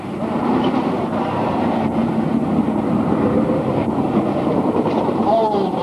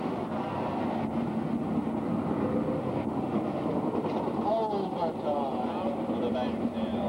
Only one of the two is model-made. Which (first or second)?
first